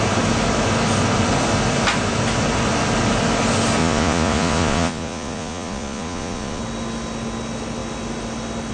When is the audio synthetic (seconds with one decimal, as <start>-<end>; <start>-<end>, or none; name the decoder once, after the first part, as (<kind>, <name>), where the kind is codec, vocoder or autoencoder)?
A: 3.8-6.6 (vocoder, Vocos)